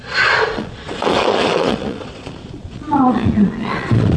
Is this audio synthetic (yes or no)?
yes